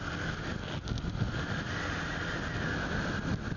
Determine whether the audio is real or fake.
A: real